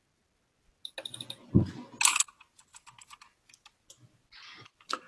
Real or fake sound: real